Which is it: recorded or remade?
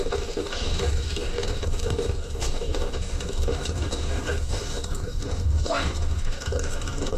remade